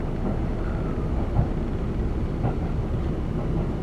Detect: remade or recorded recorded